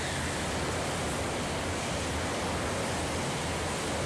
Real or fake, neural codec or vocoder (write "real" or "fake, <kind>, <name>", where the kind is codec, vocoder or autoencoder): real